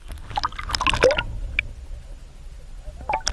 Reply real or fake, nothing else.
real